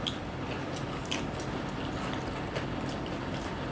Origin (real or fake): real